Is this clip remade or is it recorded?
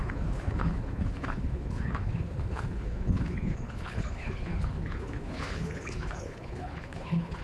remade